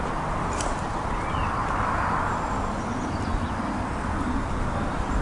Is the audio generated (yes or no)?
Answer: no